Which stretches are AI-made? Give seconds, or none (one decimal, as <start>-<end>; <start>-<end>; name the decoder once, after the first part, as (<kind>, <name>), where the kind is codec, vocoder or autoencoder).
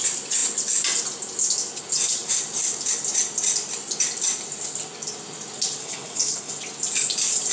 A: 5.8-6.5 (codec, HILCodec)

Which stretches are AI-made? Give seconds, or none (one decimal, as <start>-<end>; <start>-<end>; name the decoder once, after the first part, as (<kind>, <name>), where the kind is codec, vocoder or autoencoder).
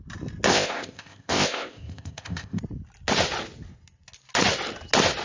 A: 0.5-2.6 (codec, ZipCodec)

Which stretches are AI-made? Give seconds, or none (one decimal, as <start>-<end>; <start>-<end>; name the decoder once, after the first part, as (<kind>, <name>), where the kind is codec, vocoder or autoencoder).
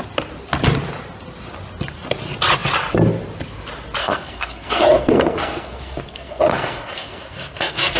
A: 4.0-8.0 (codec, SNAC)